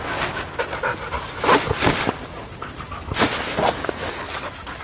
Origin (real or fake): real